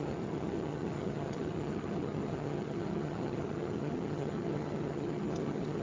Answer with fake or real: fake